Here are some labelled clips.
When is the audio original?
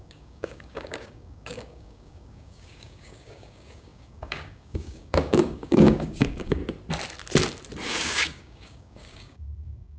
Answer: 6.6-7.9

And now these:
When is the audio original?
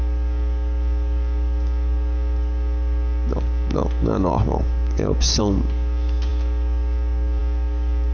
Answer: none